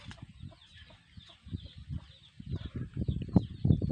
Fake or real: real